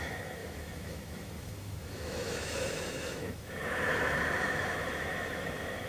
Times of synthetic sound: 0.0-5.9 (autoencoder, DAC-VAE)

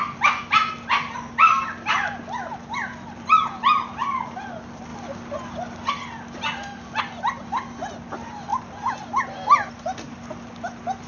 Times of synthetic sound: none

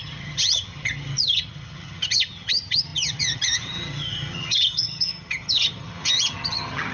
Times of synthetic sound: 0.0-6.9 (vocoder, HiFi-GAN)